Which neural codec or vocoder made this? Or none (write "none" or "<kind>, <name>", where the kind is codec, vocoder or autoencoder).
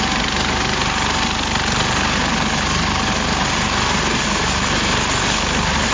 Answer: none